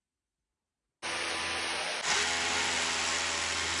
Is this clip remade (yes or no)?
no